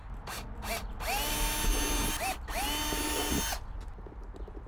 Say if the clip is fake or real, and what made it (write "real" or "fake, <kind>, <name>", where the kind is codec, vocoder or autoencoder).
real